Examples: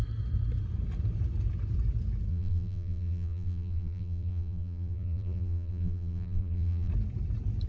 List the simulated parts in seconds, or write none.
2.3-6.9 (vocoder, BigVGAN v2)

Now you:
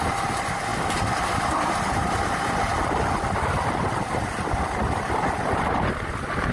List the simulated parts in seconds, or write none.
5.4-5.9 (vocoder, BigVGAN v2)

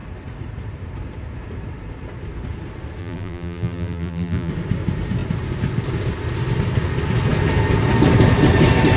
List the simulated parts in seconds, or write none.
3.0-4.5 (vocoder, BigVGAN v2)

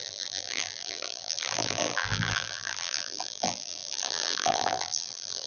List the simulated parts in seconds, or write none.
0.0-5.5 (vocoder, BigVGAN v2)

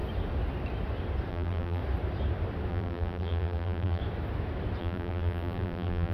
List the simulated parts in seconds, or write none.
1.3-1.8 (vocoder, BigVGAN v2); 2.7-4.0; 4.8-6.1

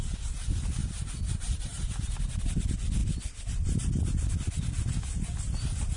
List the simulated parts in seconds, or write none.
0.8-2.4 (vocoder, BigVGAN v2)